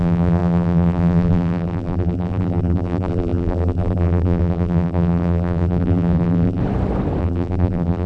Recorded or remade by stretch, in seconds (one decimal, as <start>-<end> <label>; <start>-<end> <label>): 0.0-6.6 remade; 6.6-7.2 recorded; 7.2-8.1 remade

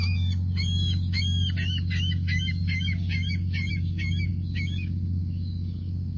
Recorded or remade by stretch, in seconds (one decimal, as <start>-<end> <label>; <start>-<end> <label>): 0.0-6.2 remade

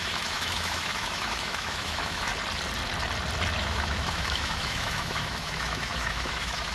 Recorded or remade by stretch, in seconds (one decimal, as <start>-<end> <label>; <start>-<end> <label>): 0.0-2.3 remade; 2.3-3.6 recorded; 3.6-6.7 remade

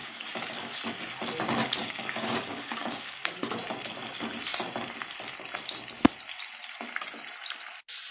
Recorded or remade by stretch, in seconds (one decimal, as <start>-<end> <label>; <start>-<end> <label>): 0.0-0.8 remade; 0.8-1.8 recorded; 1.8-3.4 remade; 3.4-8.1 recorded

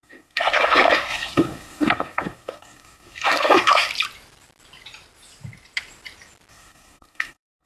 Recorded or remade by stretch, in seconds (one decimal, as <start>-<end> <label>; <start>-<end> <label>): 0.0-3.9 remade; 3.9-6.5 recorded; 6.5-7.7 remade